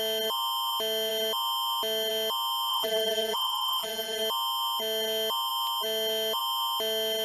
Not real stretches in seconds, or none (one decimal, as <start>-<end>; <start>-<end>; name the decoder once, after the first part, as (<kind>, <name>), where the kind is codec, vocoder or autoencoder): 2.7-4.2 (vocoder, BigVGAN v2)